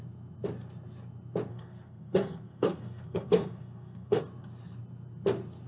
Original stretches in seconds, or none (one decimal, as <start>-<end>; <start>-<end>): 0.0-1.5; 4.2-5.7